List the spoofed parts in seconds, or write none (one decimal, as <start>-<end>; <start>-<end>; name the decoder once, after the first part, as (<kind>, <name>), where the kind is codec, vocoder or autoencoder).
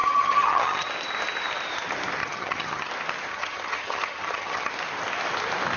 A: 0.0-0.9 (vocoder, HiFi-GAN); 2.2-2.9; 3.3-4.7